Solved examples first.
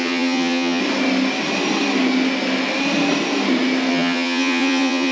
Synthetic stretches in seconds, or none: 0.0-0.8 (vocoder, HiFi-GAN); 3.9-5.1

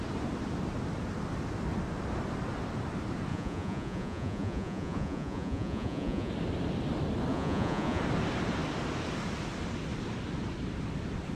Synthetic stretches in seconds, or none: 3.3-6.3 (vocoder, Vocos); 7.3-8.0

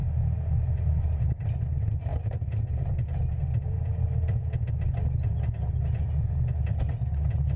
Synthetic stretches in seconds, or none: none

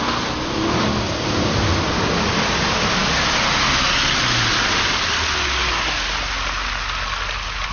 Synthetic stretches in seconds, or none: none

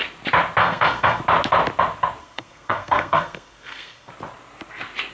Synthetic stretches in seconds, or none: 0.6-1.2 (codec, SNAC); 2.2-4.1

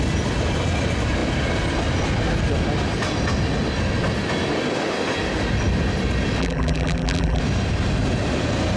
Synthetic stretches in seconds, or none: 6.4-7.4 (vocoder, BigVGAN v2)

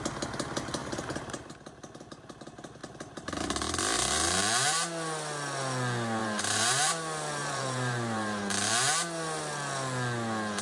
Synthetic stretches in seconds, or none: 0.8-1.5 (vocoder, BigVGAN v2); 6.2-6.9; 7.4-8.4

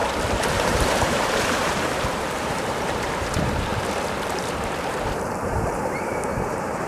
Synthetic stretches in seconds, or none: 0.5-3.7 (vocoder, BigVGAN v2); 4.3-6.9